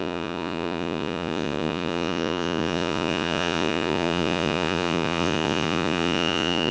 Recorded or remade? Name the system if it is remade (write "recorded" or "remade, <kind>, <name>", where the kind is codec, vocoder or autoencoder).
remade, vocoder, Vocos